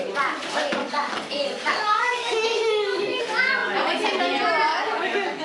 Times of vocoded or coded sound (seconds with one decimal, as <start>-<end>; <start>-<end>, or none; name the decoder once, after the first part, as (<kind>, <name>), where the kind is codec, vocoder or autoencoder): 0.8-3.2 (codec, DAC); 4.7-5.4